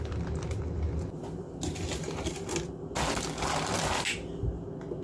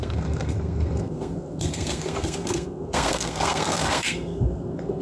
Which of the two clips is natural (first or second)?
first